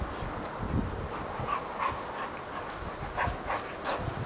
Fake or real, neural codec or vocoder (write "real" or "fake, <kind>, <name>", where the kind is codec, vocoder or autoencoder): real